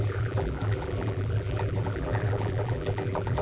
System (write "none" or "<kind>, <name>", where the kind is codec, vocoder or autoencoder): vocoder, BigVGAN v2